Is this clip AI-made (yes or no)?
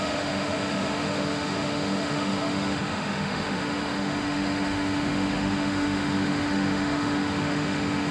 yes